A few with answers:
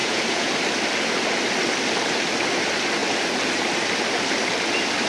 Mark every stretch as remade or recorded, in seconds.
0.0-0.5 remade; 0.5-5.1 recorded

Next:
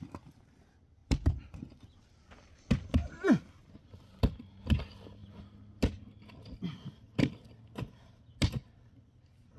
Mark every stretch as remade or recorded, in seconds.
0.0-9.6 recorded

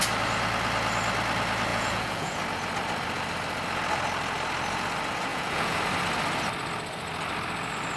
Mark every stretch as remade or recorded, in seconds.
0.0-1.7 recorded; 1.7-2.4 remade; 2.4-5.3 recorded; 5.3-5.8 remade; 5.8-8.0 recorded

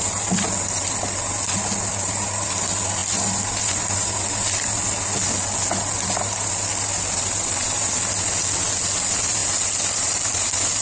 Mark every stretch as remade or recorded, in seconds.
0.0-10.8 recorded

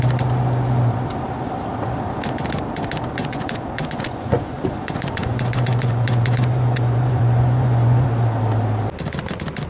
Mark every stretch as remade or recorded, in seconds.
0.0-3.2 recorded; 3.2-8.1 remade; 8.1-9.7 recorded